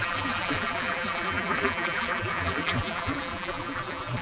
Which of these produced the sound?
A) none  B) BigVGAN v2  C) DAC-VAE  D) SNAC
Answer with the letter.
B